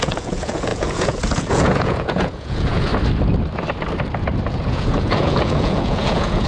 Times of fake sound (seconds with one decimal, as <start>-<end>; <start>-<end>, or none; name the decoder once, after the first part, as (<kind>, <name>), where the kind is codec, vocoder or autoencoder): 0.0-2.9 (vocoder, Vocos); 4.5-6.5